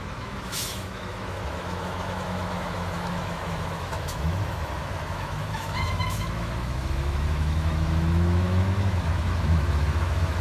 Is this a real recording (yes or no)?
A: no